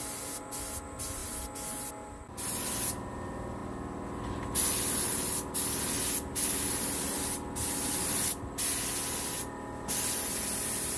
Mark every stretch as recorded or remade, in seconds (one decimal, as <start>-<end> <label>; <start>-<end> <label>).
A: 0.0-11.0 recorded